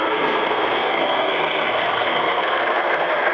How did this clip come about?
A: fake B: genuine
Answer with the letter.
A